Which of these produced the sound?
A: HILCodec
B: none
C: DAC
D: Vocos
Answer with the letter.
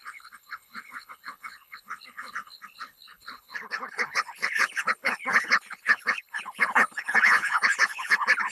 A